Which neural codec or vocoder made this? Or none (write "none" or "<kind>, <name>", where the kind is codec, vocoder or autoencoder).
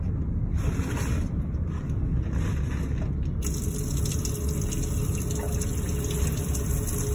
none